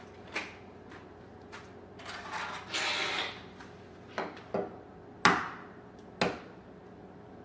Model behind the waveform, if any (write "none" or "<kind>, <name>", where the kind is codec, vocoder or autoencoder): none